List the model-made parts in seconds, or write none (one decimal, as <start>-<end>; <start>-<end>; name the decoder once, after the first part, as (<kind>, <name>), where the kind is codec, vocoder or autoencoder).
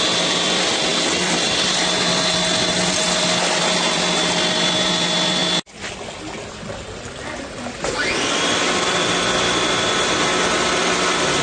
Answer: none